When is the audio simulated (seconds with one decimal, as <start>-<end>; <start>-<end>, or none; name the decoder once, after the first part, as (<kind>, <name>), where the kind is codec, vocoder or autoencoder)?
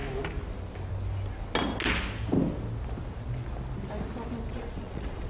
4.5-5.3 (vocoder, Vocos)